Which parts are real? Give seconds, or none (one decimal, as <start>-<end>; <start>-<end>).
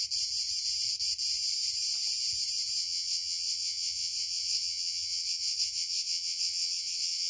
0.0-2.8